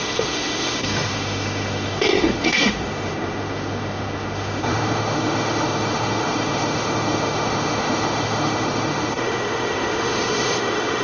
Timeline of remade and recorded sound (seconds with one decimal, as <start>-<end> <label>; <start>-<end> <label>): 0.0-11.0 remade